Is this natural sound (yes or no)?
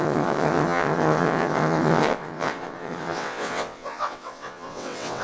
no